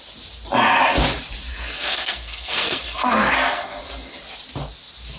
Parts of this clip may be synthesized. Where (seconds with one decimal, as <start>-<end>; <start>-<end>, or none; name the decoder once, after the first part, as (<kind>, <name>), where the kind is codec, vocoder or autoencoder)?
1.5-3.8 (codec, SNAC)